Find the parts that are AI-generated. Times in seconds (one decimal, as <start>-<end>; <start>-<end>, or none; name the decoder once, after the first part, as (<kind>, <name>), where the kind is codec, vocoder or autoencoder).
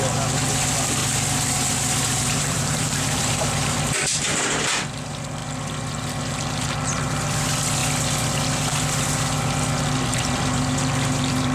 1.0-4.6 (vocoder, BigVGAN v2)